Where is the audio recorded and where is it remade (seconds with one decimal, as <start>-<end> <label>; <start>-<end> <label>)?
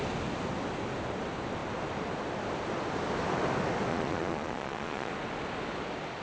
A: 0.0-3.9 recorded; 3.9-5.1 remade; 5.1-6.2 recorded